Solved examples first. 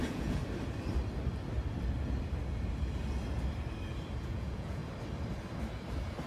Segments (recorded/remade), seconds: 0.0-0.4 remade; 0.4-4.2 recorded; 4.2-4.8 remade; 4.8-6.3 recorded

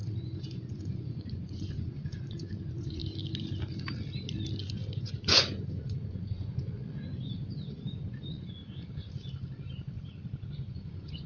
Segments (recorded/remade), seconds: 0.0-3.0 remade; 3.0-5.0 recorded; 5.0-8.6 remade; 8.6-10.5 recorded; 10.5-11.3 remade

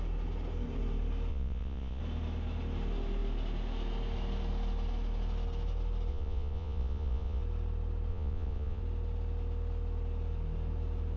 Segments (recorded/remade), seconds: 0.0-1.3 recorded; 1.3-2.0 remade; 2.0-6.1 recorded; 6.1-7.4 remade; 7.4-8.1 recorded; 8.1-8.8 remade; 8.8-11.2 recorded